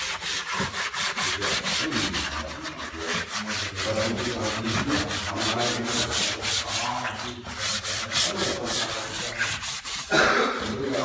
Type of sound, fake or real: real